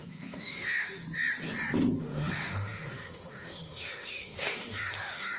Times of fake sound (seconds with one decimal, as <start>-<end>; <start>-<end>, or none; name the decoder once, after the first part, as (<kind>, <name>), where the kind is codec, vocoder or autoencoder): 0.0-1.0 (autoencoder, DAC-VAE); 2.0-5.4